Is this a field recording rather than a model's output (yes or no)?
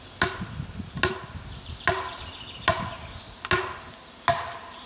yes